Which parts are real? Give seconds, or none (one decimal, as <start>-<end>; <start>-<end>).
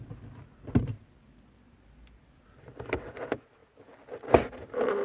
0.0-5.0